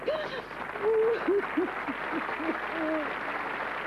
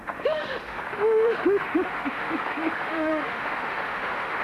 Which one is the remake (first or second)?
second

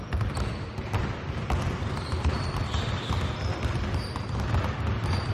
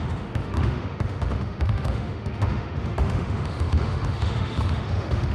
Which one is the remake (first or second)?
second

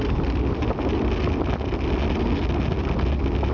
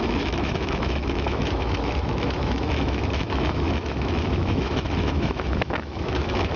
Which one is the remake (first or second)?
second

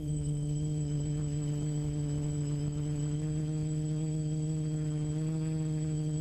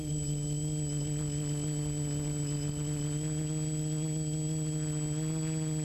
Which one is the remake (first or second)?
first